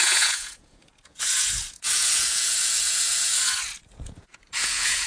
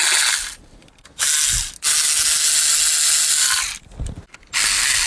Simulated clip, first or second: first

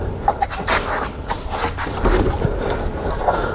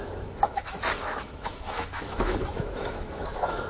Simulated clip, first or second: second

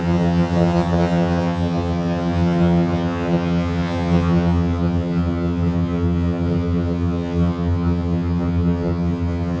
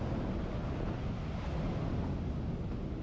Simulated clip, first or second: first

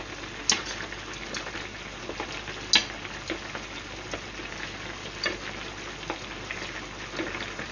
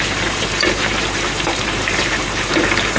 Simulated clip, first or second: second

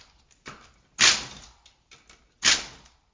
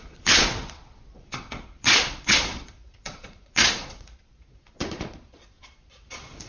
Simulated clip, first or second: second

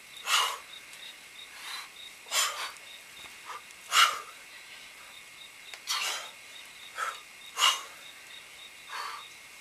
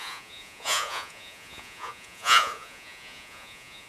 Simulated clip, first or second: second